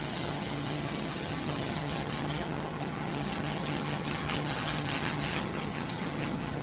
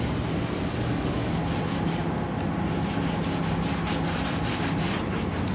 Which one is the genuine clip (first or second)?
second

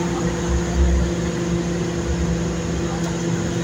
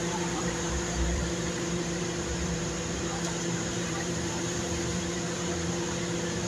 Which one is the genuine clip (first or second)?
first